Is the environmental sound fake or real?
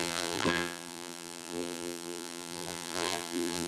fake